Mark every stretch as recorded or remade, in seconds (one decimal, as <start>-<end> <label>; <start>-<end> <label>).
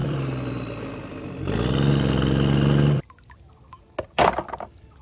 0.0-3.0 remade; 3.0-5.0 recorded